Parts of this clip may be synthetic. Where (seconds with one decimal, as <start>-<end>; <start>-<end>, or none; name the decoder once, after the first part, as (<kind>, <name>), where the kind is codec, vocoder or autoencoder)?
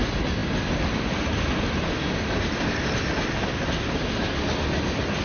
none